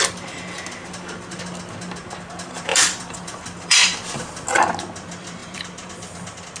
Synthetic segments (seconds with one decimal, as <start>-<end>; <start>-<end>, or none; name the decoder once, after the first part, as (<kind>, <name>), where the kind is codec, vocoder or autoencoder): 2.7-4.2 (vocoder, BigVGAN v2); 5.4-5.9